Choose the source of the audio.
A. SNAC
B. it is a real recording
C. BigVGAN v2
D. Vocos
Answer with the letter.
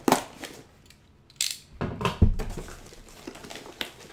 B